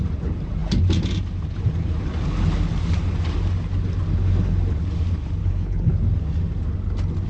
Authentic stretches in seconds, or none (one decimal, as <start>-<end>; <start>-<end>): 0.0-5.4; 5.9-7.3